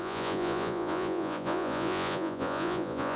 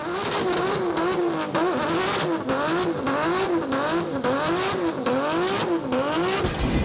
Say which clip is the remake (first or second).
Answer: first